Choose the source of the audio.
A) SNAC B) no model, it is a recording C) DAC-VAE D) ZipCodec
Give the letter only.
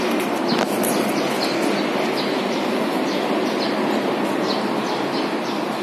B